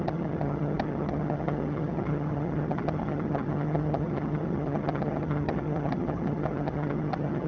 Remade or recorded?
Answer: remade